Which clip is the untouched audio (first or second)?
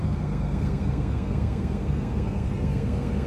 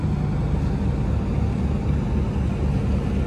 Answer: second